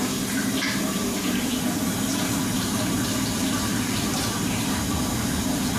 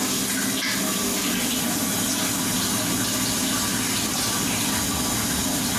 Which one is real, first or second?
second